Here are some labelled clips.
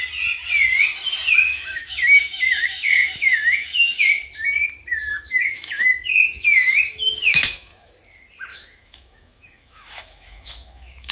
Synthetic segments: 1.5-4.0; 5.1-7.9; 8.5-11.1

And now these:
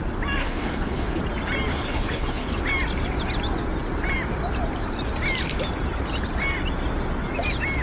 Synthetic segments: 0.4-1.2; 1.7-2.6